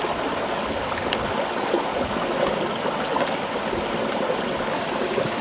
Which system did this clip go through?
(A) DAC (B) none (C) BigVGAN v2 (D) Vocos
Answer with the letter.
B